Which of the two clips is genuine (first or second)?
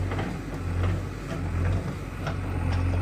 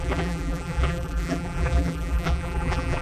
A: first